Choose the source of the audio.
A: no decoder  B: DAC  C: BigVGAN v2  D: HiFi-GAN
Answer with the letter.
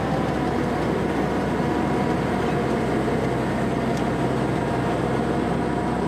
A